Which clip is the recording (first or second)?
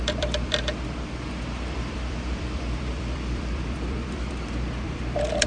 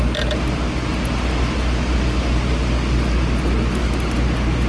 second